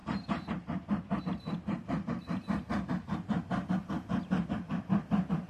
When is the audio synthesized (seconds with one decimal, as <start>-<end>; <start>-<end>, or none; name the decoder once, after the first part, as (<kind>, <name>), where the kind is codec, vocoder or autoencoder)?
none